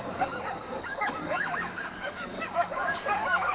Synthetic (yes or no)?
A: yes